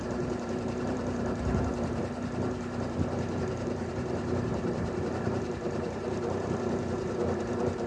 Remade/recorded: remade